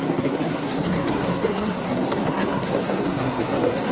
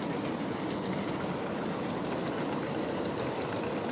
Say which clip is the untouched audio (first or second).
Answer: second